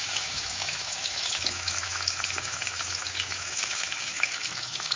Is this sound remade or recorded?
remade